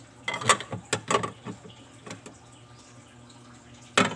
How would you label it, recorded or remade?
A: recorded